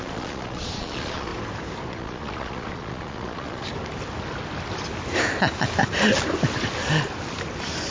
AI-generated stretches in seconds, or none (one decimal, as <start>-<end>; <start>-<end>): 0.0-1.3; 1.9-3.7